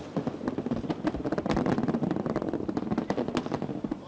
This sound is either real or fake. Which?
real